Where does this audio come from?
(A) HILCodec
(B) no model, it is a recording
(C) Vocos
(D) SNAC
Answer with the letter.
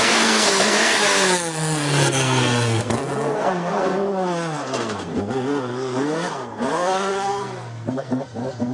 D